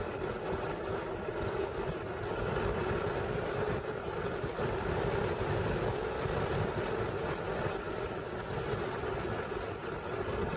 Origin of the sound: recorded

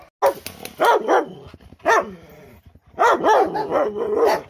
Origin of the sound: recorded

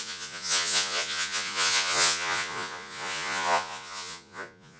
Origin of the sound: remade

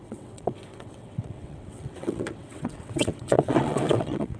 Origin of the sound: remade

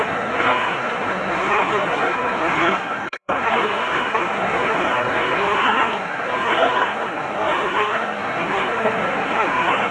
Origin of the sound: remade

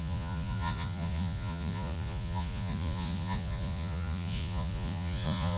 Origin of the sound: remade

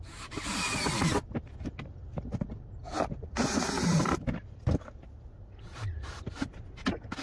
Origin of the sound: recorded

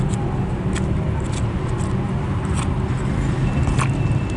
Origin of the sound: recorded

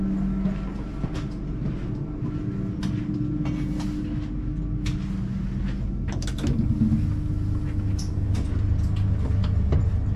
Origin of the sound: recorded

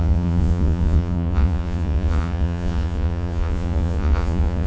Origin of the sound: remade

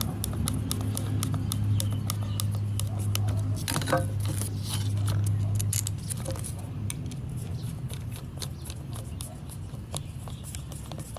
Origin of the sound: recorded